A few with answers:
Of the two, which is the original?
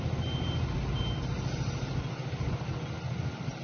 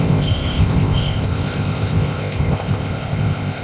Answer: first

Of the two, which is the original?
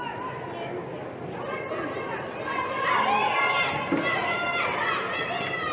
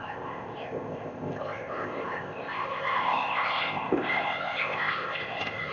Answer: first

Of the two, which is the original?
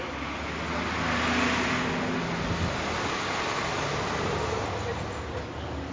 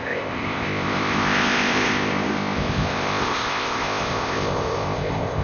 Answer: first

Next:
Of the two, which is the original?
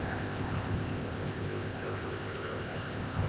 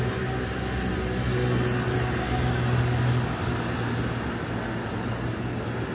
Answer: second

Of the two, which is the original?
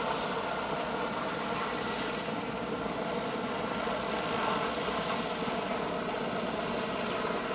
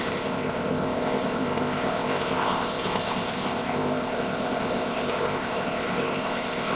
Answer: first